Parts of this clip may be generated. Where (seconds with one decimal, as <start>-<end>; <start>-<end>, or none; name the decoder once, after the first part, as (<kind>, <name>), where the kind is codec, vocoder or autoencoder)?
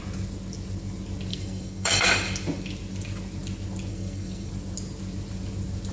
1.3-2.1 (codec, SNAC); 3.9-4.5